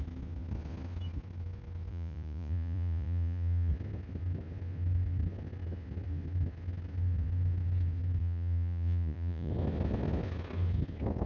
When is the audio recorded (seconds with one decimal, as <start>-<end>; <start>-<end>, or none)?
0.0-1.9; 3.7-8.2; 9.5-11.3